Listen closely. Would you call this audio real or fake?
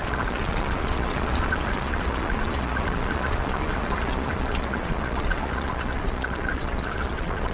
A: fake